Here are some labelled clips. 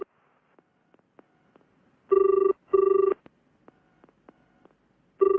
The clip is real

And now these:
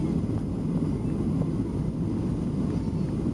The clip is real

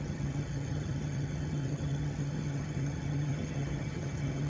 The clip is fake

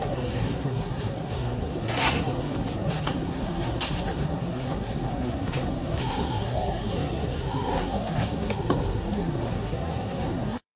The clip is fake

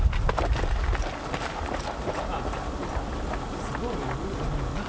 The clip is real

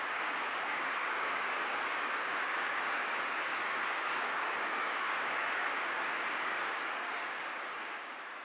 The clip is fake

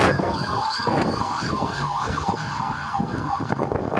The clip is fake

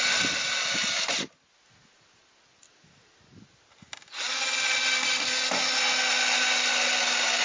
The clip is real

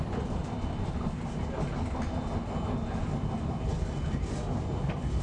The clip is real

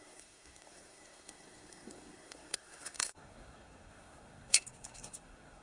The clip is fake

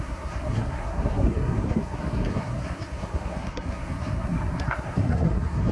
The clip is fake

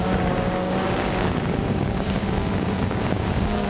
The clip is fake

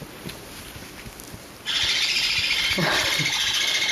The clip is real